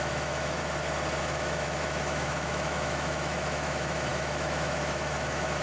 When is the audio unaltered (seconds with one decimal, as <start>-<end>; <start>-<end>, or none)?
0.6-1.2